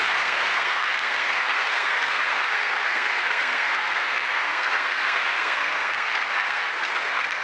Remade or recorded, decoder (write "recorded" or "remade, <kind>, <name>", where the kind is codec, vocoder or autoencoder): remade, codec, SNAC